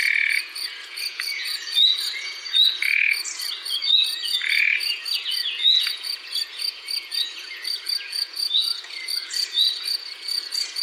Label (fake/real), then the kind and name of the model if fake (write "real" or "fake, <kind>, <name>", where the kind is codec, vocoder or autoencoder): fake, vocoder, Vocos